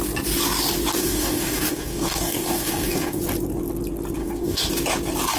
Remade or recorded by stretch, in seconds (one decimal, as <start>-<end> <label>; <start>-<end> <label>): 0.0-1.0 recorded; 1.0-3.2 remade; 3.2-4.2 recorded; 4.2-4.7 remade; 4.7-5.4 recorded